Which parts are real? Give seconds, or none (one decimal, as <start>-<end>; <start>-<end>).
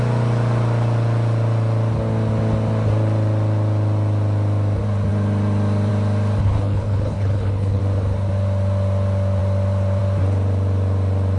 0.0-6.4; 7.8-11.4